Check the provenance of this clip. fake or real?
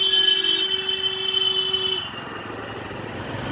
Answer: real